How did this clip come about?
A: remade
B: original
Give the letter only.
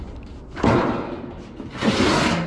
B